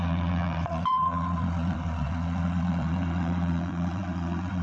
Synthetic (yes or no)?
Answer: yes